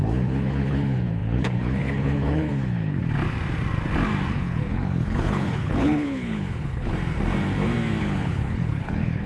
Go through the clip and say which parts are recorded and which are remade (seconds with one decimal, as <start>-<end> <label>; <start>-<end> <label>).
0.0-3.0 remade; 3.0-4.3 recorded; 4.3-6.9 remade; 6.9-8.0 recorded; 8.0-9.3 remade